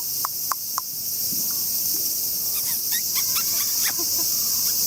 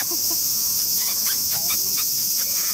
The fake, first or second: second